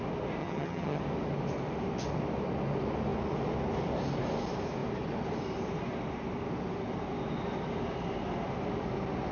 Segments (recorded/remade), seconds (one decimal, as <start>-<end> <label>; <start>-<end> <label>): 0.0-0.4 recorded; 0.4-1.0 remade; 1.0-9.3 recorded